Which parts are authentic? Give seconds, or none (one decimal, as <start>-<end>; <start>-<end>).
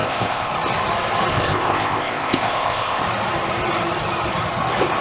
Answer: 0.5-1.3; 3.0-5.0